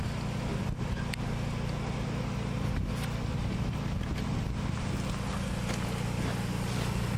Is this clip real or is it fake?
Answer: real